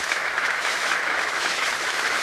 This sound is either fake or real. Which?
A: fake